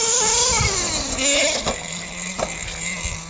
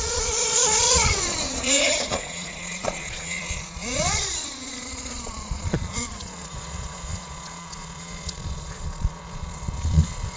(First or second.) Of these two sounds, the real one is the first